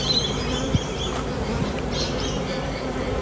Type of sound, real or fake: fake